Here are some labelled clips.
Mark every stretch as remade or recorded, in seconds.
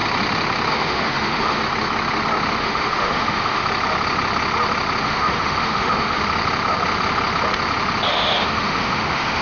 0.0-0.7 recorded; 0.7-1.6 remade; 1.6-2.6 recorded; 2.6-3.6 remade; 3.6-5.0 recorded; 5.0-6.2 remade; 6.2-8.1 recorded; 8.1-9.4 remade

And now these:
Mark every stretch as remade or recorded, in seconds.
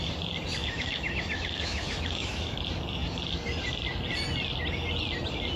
0.0-0.6 recorded; 0.6-2.6 remade; 2.6-5.6 recorded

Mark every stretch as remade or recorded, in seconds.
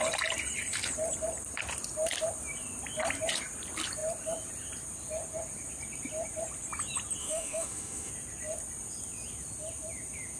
0.0-7.2 recorded; 7.2-8.1 remade; 8.1-10.4 recorded